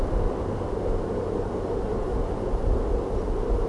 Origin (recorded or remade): recorded